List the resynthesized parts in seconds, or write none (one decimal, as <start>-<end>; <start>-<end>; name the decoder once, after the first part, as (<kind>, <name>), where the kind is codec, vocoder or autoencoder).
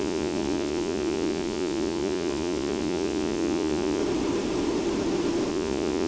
0.0-4.0 (vocoder, Vocos); 5.5-6.1